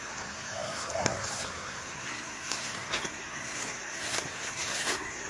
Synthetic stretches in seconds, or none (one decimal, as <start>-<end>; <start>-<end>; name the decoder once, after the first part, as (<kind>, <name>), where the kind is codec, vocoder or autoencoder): 0.0-5.3 (codec, SNAC)